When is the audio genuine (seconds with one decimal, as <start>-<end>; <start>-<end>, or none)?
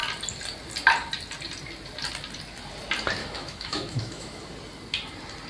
0.0-3.2; 4.4-5.5